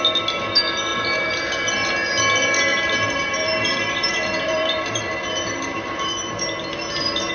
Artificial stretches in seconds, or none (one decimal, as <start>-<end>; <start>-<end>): 0.9-1.9; 2.7-7.3